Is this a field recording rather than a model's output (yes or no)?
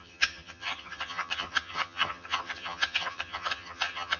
no